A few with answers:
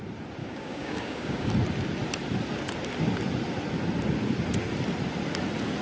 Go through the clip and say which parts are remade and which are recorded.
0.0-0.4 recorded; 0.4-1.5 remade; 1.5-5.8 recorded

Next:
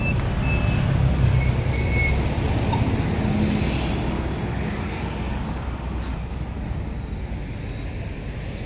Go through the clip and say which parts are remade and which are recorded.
0.0-4.5 recorded; 4.5-5.6 remade; 5.6-6.2 recorded; 6.2-6.8 remade; 6.8-8.7 recorded